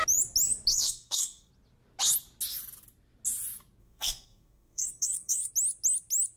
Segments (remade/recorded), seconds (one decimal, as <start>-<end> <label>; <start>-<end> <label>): 0.0-0.7 recorded; 0.7-1.5 remade; 1.5-3.8 recorded; 3.8-5.5 remade; 5.5-6.4 recorded